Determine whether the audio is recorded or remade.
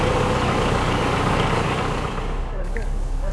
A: remade